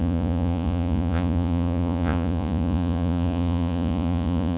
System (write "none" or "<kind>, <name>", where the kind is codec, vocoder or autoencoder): vocoder, Vocos